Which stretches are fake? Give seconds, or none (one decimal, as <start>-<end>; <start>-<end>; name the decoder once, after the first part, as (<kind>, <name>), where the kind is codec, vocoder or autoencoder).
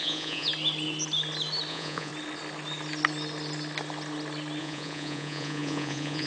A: 0.0-0.5 (vocoder, Vocos); 1.7-2.1; 4.6-6.3